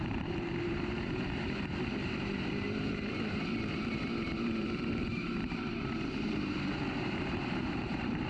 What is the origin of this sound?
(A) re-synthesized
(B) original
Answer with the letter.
A